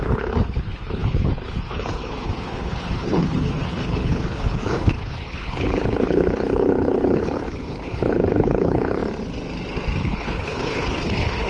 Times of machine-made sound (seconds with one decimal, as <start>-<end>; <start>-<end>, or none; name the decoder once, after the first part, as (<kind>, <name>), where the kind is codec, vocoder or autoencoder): 0.0-9.0 (codec, HILCodec); 10.0-11.5